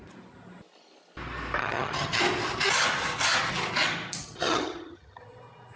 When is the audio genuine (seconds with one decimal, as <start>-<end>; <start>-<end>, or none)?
0.0-1.6; 2.2-4.2; 5.2-5.8